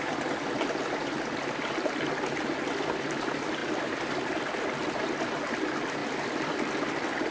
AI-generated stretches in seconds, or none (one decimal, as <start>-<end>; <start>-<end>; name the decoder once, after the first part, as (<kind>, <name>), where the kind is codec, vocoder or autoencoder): 6.0-7.3 (vocoder, BigVGAN v2)